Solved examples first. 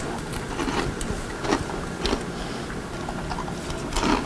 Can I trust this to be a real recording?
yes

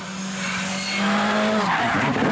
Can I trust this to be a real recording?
yes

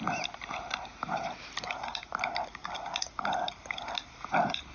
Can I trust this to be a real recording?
yes